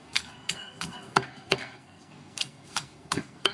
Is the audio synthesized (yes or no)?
yes